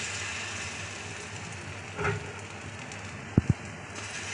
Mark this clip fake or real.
real